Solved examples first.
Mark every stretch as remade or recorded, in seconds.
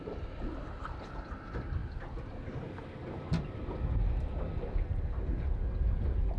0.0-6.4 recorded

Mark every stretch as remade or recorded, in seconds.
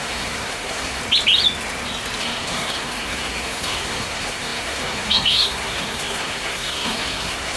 0.0-1.0 remade; 1.0-2.2 recorded; 2.2-7.6 remade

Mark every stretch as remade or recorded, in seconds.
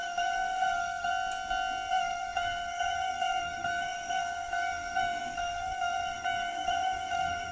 0.0-1.1 remade; 1.1-1.9 recorded; 1.9-7.5 remade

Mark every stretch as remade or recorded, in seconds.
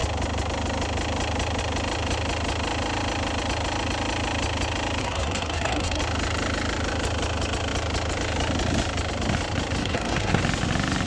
0.0-5.0 recorded; 5.0-6.0 remade; 6.0-9.8 recorded; 9.8-10.4 remade; 10.4-11.1 recorded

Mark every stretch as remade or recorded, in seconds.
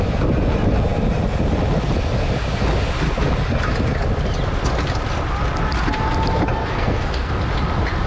0.0-6.6 recorded; 6.6-7.4 remade; 7.4-8.1 recorded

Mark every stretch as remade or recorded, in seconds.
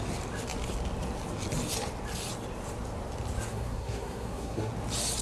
0.0-3.5 recorded; 3.5-4.7 remade; 4.7-5.2 recorded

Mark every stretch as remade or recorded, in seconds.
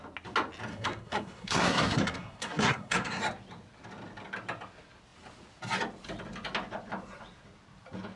0.0-0.7 recorded; 0.7-3.2 remade; 3.2-8.2 recorded